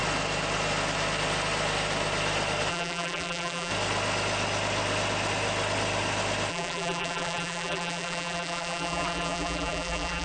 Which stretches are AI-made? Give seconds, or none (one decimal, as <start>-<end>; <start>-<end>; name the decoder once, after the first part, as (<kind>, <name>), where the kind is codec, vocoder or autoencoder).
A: 2.7-3.7 (vocoder, BigVGAN v2); 6.5-10.2